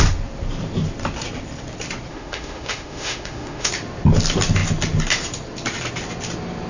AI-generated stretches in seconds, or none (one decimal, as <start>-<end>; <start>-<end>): 2.1-3.7